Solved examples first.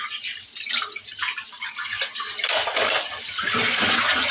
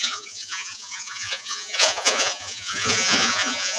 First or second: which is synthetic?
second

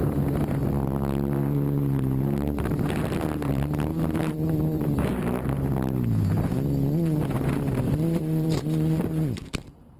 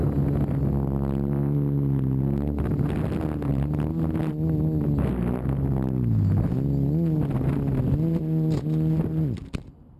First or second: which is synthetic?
first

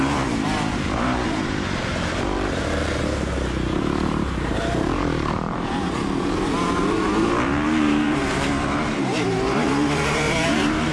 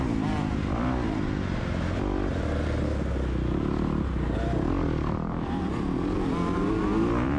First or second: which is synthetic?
first